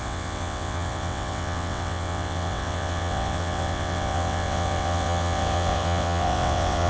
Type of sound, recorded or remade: remade